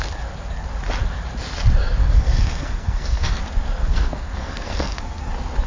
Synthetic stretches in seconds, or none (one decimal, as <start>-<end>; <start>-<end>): 2.0-3.4; 3.8-5.3